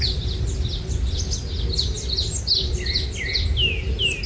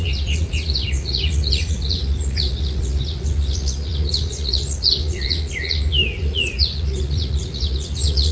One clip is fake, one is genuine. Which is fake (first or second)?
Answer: second